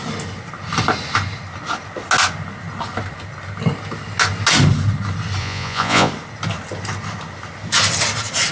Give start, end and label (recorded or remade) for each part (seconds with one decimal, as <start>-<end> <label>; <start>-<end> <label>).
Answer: 0.0-5.4 recorded; 5.4-6.1 remade; 6.1-8.5 recorded